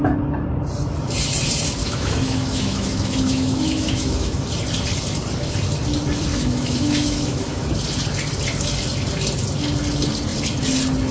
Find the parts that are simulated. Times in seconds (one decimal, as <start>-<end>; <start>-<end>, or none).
1.8-4.4; 6.3-7.7